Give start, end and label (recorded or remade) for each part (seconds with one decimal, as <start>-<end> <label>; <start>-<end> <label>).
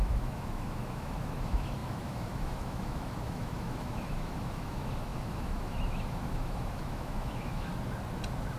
0.0-7.7 remade; 7.7-8.6 recorded